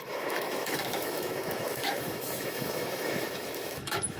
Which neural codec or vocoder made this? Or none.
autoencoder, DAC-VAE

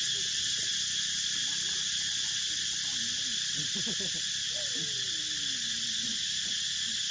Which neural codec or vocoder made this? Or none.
none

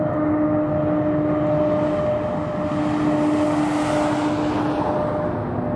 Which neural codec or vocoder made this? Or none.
none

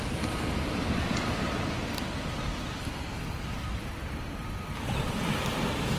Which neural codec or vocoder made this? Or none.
none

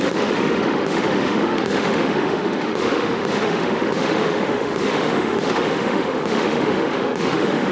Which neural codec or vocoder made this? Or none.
autoencoder, DAC-VAE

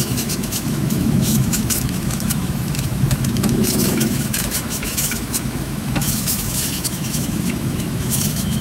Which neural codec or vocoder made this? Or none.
autoencoder, DAC-VAE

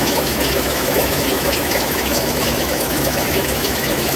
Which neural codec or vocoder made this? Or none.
autoencoder, DAC-VAE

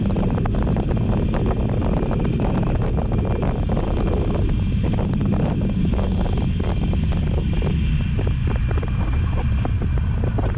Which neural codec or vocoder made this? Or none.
none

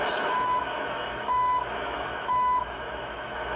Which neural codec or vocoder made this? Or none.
autoencoder, DAC-VAE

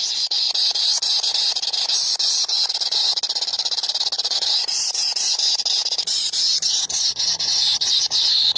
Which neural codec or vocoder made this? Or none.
none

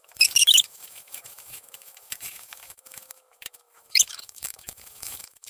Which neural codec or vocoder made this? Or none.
autoencoder, DAC-VAE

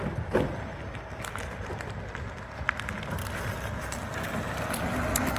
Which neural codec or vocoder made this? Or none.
none